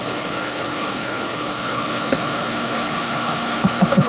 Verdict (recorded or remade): remade